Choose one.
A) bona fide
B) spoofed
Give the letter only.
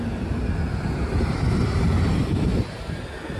A